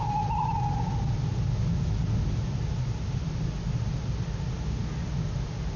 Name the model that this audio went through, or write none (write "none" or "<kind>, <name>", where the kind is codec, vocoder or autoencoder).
none